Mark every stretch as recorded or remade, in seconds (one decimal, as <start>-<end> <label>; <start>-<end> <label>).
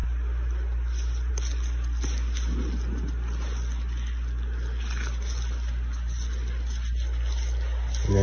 0.0-8.2 recorded